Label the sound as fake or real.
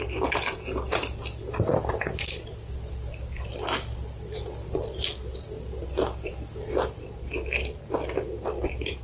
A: real